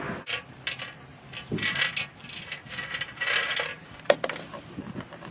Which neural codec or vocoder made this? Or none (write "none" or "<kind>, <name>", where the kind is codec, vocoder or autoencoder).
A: none